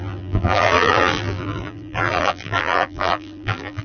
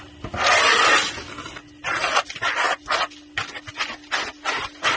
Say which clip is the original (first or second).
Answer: second